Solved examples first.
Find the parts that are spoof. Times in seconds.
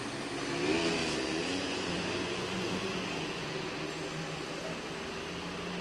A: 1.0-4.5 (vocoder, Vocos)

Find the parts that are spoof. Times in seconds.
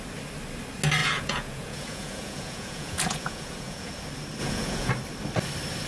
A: 1.0-3.9 (vocoder, Vocos); 4.4-4.9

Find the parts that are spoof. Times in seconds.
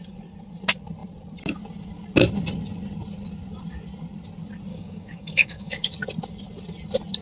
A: 4.7-5.9 (codec, DAC)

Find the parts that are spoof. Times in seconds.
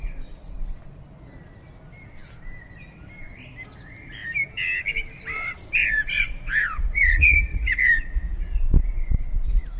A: 5.8-8.6 (vocoder, Vocos)